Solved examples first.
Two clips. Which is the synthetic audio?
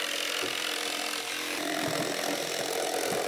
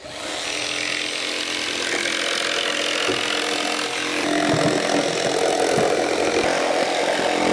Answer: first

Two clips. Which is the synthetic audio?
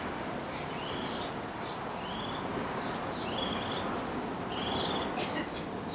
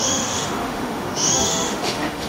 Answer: second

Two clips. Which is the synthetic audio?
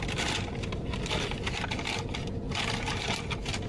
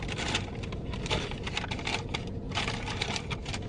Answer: second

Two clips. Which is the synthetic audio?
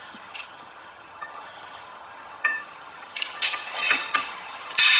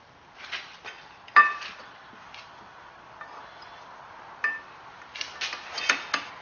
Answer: first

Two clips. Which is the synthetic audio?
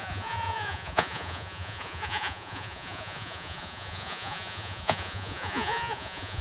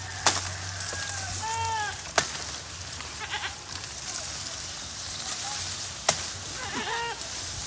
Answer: first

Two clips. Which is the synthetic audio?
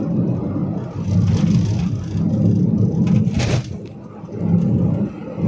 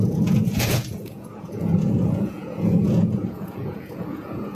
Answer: second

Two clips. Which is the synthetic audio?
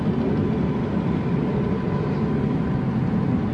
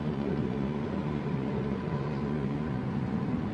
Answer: second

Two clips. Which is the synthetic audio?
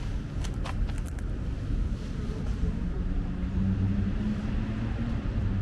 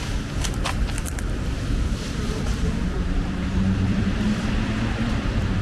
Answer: second